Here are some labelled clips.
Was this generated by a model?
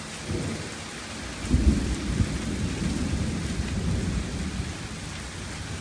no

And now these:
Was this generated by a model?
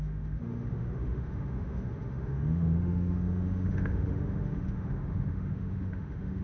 yes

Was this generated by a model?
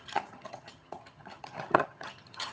yes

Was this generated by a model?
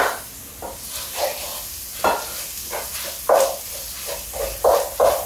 no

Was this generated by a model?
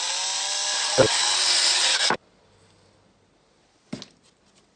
no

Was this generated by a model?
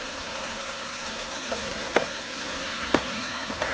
yes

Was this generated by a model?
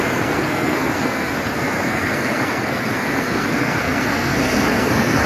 yes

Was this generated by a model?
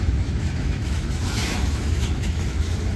yes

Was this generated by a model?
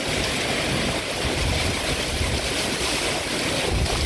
no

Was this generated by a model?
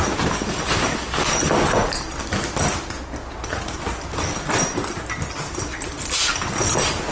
no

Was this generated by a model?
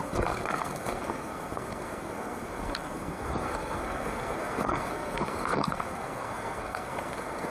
yes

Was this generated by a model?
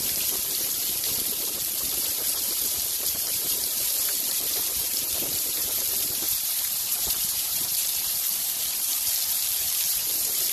yes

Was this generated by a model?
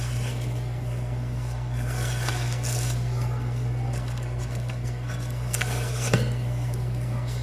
yes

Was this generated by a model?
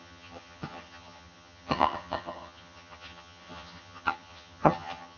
yes